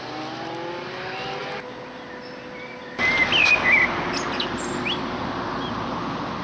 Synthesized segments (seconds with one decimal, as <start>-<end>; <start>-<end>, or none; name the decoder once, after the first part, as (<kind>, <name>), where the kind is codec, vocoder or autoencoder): none